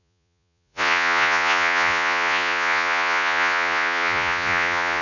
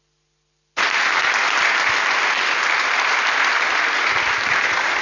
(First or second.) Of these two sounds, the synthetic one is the first